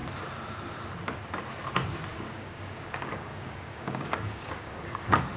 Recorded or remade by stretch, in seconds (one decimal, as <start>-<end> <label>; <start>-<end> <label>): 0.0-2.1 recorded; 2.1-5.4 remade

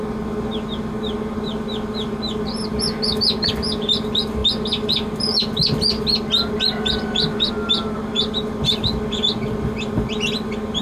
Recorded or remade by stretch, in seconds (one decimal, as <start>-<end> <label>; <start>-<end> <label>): 0.0-10.8 recorded

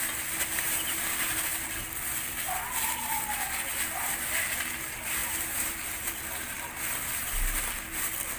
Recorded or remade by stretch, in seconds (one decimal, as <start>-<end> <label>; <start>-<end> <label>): 0.0-0.5 recorded; 0.5-1.4 remade; 1.4-5.2 recorded; 5.2-6.2 remade; 6.2-8.4 recorded

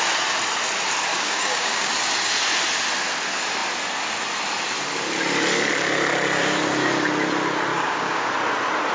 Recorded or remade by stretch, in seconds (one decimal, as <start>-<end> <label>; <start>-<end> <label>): 0.0-1.1 recorded; 1.1-1.9 remade; 1.9-7.7 recorded; 7.7-8.3 remade; 8.3-8.9 recorded